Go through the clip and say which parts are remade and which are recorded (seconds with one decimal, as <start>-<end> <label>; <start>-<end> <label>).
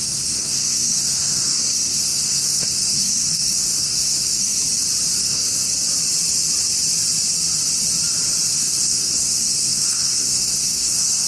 0.0-4.6 remade; 4.6-5.2 recorded; 5.2-5.7 remade; 5.7-8.5 recorded; 8.5-11.3 remade